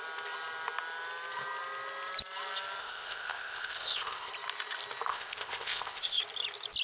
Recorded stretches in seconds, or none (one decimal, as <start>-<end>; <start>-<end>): 0.0-2.8; 4.3-5.1; 6.2-6.8